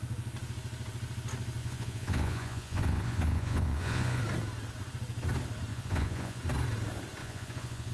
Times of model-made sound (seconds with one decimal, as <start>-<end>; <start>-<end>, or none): 1.6-4.2; 5.7-6.4; 7.2-7.9